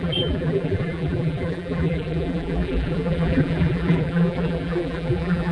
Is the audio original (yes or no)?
no